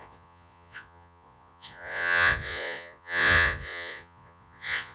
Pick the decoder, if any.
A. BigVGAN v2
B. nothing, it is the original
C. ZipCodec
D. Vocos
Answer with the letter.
D